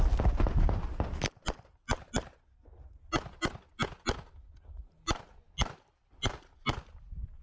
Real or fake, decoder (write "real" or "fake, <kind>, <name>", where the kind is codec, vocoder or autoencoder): real